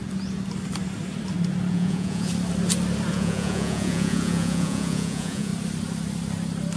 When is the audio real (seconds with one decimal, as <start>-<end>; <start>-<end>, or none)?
0.0-1.7; 2.3-3.1; 5.5-6.8